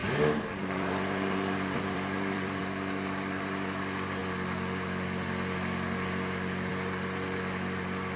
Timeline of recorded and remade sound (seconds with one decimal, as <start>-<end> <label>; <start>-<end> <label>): 0.0-2.6 remade; 2.6-8.2 recorded